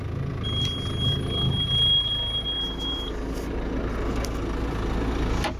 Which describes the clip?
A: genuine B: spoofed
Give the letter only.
A